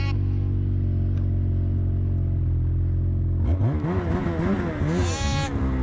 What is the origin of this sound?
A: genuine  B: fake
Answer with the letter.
A